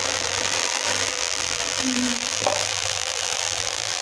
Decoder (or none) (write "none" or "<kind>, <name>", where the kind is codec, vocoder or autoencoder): vocoder, BigVGAN v2